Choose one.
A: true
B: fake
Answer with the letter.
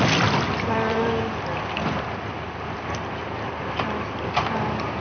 B